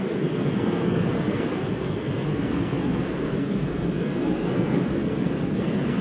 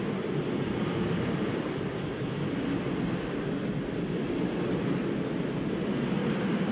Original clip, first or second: second